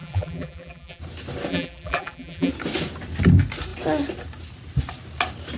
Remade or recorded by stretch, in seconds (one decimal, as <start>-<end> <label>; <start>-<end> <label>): 0.0-1.0 remade; 1.0-1.5 recorded; 1.5-2.5 remade; 2.5-5.6 recorded